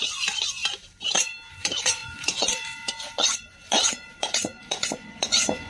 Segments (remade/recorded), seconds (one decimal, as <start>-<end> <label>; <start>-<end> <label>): 0.0-0.6 remade; 0.6-1.5 recorded; 1.5-5.7 remade